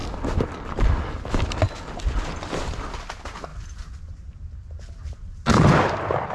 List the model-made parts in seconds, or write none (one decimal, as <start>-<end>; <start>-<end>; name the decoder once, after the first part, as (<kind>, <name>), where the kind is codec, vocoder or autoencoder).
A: none